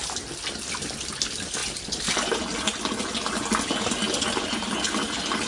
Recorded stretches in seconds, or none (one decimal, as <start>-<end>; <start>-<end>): 0.0-5.5